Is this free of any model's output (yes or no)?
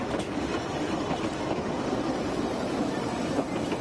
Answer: yes